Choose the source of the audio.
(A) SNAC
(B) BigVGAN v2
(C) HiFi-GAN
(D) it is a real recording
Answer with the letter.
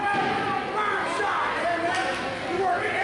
D